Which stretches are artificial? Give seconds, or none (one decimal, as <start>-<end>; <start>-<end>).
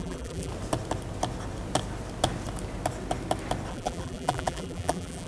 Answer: 0.0-0.5; 3.7-5.3